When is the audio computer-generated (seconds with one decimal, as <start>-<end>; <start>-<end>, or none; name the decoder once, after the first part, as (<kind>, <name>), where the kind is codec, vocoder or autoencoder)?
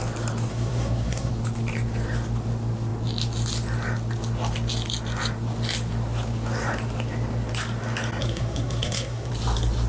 0.5-1.3 (codec, SNAC); 8.2-9.3